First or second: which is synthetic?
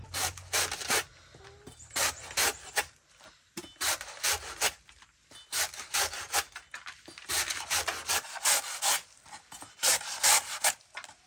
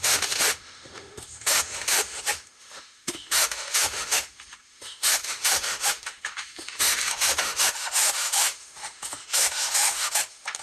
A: second